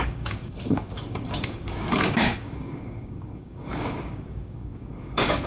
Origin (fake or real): fake